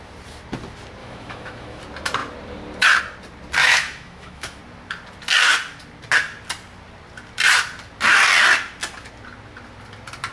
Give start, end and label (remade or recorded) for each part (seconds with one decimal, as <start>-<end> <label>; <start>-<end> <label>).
0.0-1.0 recorded; 1.0-1.8 remade; 1.8-3.6 recorded; 3.6-4.6 remade; 4.6-10.3 recorded